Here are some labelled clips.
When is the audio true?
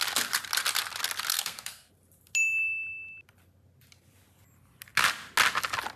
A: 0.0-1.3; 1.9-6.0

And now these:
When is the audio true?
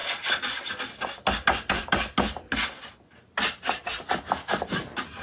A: 0.0-5.2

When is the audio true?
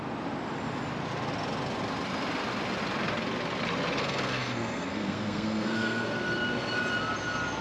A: 0.0-4.0; 6.1-7.6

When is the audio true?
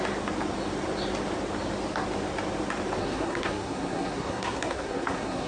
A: 0.0-3.0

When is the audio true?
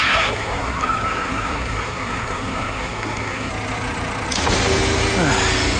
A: 3.5-5.8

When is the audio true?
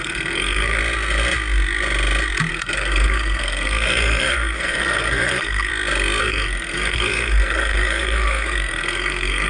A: 0.8-2.5; 5.7-6.2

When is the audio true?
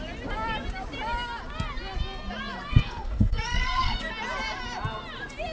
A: 0.0-2.7; 4.1-5.5